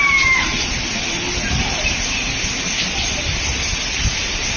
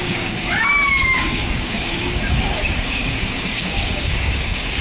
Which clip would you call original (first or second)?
first